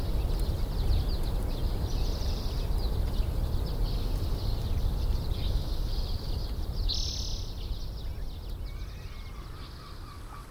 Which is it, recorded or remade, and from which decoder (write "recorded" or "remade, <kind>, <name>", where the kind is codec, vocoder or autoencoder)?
recorded